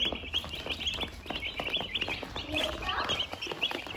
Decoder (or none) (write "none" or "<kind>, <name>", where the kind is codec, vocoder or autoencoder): none